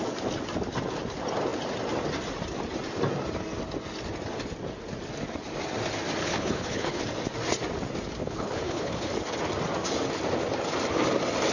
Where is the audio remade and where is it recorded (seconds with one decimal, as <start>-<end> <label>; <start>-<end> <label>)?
0.0-6.2 recorded; 6.2-7.0 remade; 7.0-8.2 recorded; 8.2-9.1 remade; 9.1-11.5 recorded